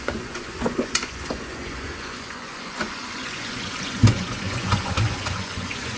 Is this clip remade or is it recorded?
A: remade